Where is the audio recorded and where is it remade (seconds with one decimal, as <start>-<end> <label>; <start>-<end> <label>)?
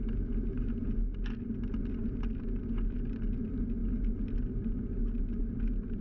0.0-6.0 recorded